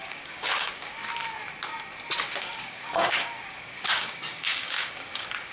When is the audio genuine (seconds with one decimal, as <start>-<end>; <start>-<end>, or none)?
1.0-2.4